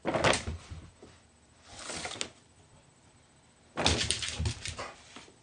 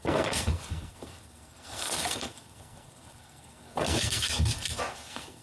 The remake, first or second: second